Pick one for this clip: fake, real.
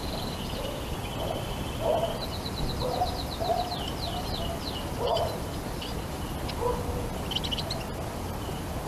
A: real